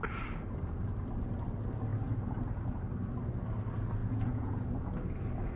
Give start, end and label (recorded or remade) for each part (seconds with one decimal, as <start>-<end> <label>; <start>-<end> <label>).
0.0-4.0 recorded; 4.0-4.7 remade; 4.7-5.6 recorded